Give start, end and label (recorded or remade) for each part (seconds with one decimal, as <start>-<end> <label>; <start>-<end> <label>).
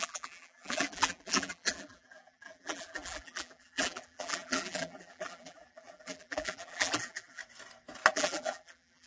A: 0.0-7.4 remade; 7.4-8.1 recorded; 8.1-9.1 remade